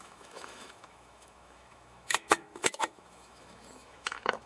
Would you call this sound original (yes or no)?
no